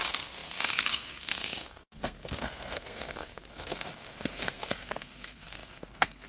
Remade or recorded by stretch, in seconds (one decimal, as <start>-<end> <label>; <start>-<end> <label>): 0.0-6.3 remade